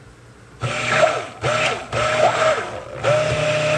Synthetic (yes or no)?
no